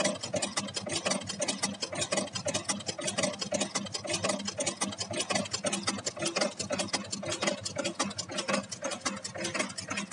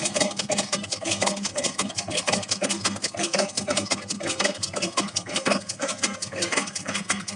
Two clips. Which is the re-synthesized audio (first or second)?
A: second